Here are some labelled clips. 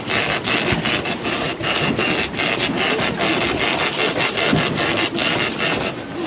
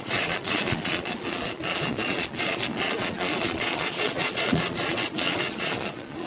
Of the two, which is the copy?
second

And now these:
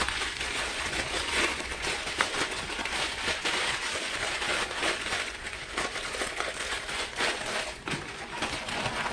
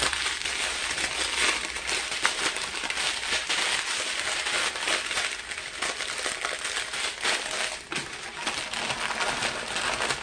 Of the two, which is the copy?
first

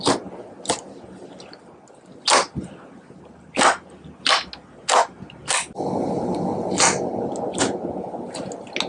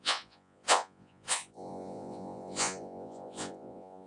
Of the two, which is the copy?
second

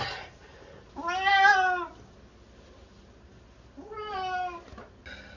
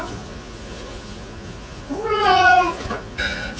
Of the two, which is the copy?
second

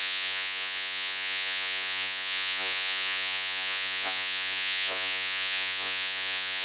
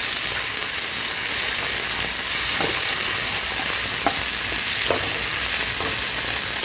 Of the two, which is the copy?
first